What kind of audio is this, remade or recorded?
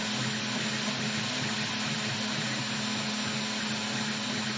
recorded